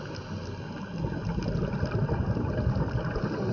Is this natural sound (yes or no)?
yes